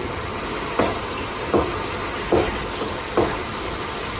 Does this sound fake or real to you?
real